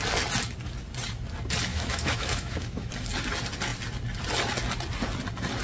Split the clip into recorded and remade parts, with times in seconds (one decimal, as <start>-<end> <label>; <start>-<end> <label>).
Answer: 0.0-1.7 recorded; 1.7-2.9 remade; 2.9-5.6 recorded